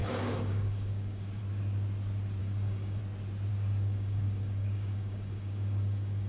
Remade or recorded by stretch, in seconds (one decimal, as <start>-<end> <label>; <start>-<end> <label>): 0.0-1.4 remade; 1.4-2.4 recorded; 2.4-3.0 remade; 3.0-3.5 recorded; 3.5-6.3 remade